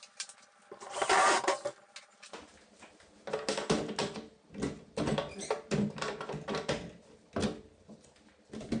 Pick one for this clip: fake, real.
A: real